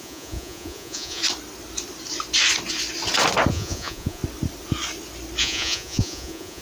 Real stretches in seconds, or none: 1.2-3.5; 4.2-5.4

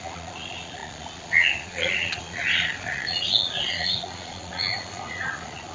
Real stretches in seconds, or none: none

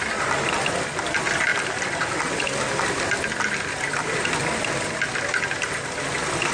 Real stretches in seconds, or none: 0.0-6.5

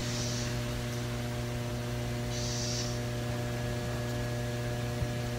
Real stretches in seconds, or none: 0.0-5.4

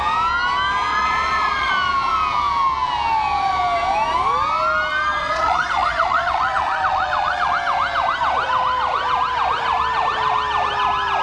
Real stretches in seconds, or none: 0.0-0.9; 1.7-5.2; 7.5-11.2